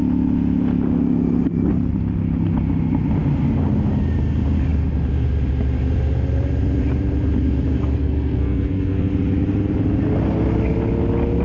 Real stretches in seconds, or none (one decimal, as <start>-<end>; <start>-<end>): 0.0-7.7; 9.1-11.4

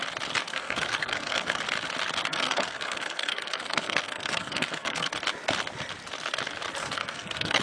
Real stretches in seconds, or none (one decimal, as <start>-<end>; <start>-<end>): 0.0-0.5; 1.6-2.3; 5.1-6.8

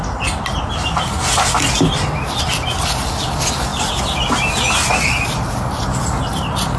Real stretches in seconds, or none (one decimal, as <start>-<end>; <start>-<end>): 0.0-6.8

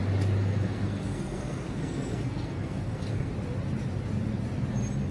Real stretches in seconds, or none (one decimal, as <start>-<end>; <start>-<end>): 0.0-0.5; 3.3-5.1

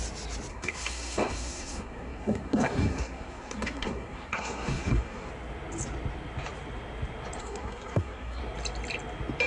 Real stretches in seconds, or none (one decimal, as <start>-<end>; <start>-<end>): 0.0-0.5; 5.3-7.4; 8.4-9.5

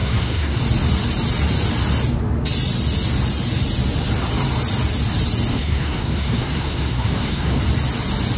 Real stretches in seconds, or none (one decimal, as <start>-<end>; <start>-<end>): 0.6-5.5; 7.6-8.4